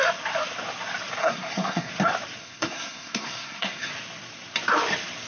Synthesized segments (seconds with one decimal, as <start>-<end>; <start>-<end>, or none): 1.2-1.9; 2.4-3.9